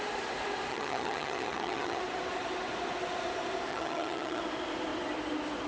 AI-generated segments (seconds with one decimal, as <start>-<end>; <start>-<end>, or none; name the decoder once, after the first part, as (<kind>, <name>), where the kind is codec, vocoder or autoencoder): 0.7-2.0 (vocoder, HiFi-GAN); 3.7-4.4